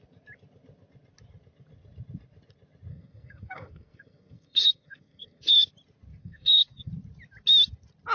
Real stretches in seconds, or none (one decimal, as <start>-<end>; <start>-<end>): 0.0-2.9; 5.7-6.2; 6.9-8.1